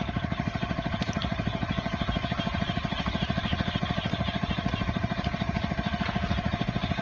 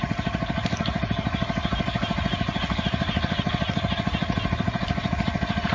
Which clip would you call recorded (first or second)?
second